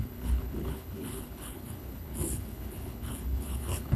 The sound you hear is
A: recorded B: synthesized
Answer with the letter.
B